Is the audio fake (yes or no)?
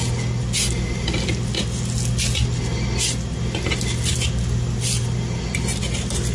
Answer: no